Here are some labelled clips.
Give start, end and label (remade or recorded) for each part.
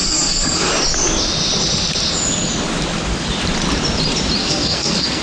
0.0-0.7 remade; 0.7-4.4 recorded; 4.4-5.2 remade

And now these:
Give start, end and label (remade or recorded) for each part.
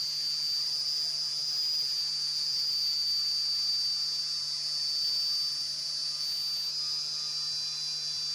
0.0-8.3 recorded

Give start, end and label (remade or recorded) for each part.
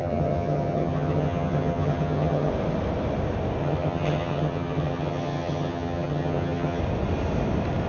0.0-2.5 remade; 2.5-3.6 recorded; 3.6-6.8 remade; 6.8-7.9 recorded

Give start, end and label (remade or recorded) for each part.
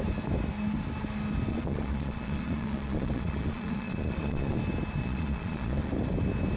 0.0-1.5 recorded; 1.5-4.6 remade; 4.6-5.0 recorded; 5.0-5.9 remade; 5.9-6.6 recorded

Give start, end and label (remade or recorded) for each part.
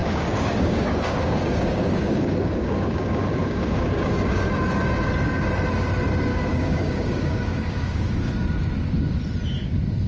0.0-4.5 remade; 4.5-6.3 recorded; 6.3-8.3 remade; 8.3-10.1 recorded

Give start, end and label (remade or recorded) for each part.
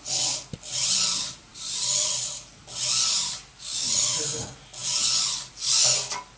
0.0-6.4 recorded